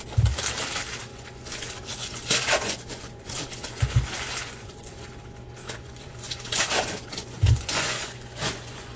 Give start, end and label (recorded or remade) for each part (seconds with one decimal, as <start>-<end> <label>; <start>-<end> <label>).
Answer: 0.0-1.1 recorded; 1.1-5.1 remade; 5.1-5.6 recorded; 5.6-9.0 remade

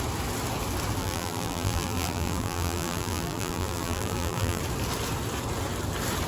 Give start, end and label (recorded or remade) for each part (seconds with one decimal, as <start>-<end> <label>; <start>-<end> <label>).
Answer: 0.0-1.0 recorded; 1.0-4.6 remade; 4.6-6.3 recorded

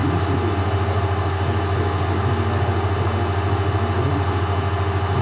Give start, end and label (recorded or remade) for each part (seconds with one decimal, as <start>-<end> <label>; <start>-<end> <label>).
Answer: 0.0-5.2 recorded

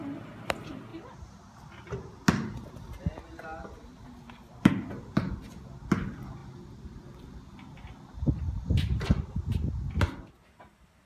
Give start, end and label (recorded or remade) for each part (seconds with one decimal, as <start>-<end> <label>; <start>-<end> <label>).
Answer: 0.0-11.1 recorded

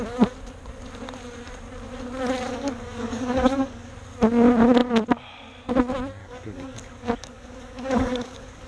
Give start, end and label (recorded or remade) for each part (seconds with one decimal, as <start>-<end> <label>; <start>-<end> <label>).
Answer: 0.0-2.5 recorded; 2.5-3.9 remade; 3.9-6.2 recorded; 6.2-8.7 remade